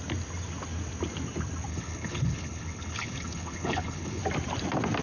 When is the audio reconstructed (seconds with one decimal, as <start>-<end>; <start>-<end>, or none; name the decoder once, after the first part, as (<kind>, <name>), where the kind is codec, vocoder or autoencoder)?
1.7-4.2 (codec, HILCodec)